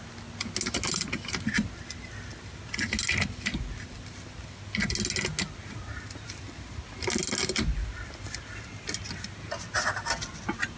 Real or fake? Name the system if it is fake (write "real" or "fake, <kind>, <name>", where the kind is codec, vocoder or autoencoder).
real